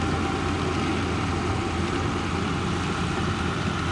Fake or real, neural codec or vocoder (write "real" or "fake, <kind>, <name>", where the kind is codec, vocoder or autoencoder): real